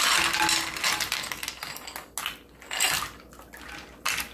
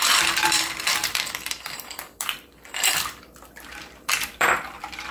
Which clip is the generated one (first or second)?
second